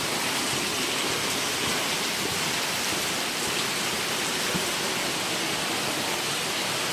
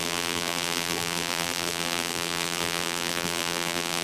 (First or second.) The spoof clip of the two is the second